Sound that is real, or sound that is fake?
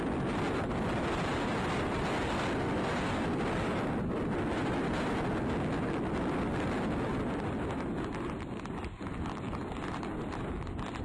real